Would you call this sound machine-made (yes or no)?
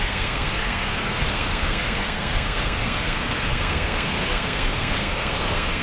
yes